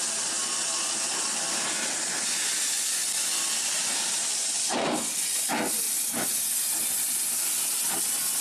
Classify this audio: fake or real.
real